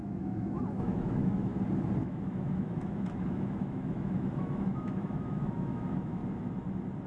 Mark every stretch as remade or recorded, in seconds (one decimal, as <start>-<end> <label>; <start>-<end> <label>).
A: 0.0-1.5 remade; 1.5-2.0 recorded; 2.0-6.2 remade; 6.2-7.1 recorded